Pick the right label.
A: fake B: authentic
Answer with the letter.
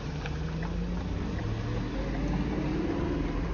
B